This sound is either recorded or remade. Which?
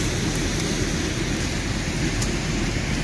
recorded